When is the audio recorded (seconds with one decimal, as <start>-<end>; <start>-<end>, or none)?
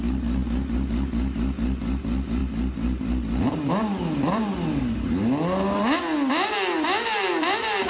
0.0-7.9